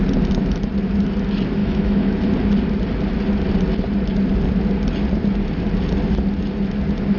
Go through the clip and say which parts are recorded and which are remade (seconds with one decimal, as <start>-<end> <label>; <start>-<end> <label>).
0.0-1.6 recorded; 1.6-2.2 remade; 2.2-7.2 recorded